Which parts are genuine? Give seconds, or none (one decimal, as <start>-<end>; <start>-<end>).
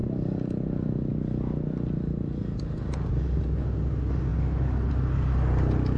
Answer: 0.0-6.0